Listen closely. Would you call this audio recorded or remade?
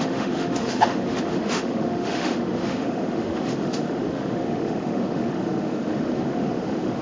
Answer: remade